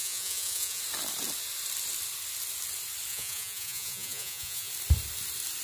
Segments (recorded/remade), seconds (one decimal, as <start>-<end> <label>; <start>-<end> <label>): 0.0-0.8 remade; 0.8-3.1 recorded; 3.1-4.7 remade; 4.7-5.6 recorded